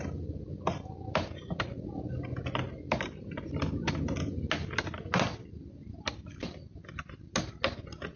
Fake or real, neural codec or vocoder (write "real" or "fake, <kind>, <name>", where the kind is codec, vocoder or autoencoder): real